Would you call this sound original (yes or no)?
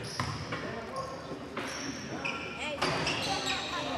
yes